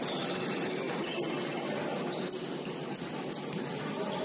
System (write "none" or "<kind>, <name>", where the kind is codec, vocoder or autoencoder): none